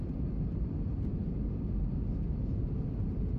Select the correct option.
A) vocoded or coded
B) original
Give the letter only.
B